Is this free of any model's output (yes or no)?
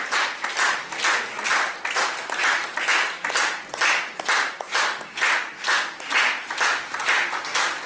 yes